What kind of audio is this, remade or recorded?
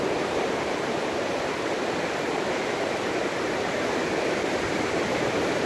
recorded